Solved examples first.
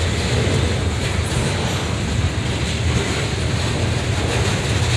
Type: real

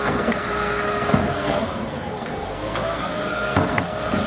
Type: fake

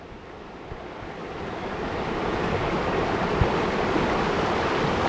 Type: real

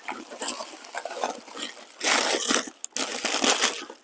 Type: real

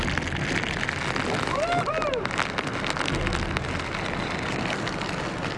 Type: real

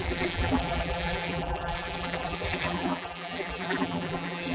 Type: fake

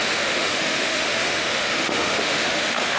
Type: fake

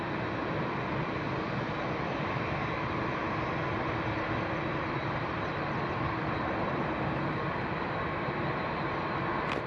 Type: real